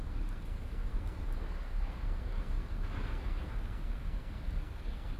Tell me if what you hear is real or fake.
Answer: fake